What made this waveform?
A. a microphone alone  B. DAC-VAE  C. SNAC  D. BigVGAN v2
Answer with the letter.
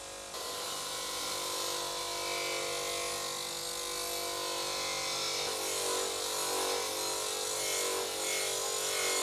A